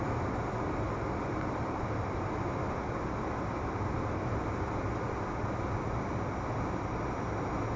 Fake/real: real